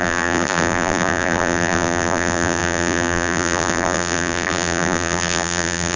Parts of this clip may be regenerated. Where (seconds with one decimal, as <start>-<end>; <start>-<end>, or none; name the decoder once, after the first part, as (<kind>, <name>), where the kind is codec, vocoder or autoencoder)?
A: 0.0-6.0 (vocoder, BigVGAN v2)